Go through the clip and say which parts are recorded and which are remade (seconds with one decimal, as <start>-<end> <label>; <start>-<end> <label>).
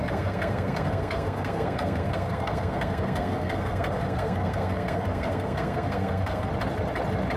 0.0-6.5 remade; 6.5-7.4 recorded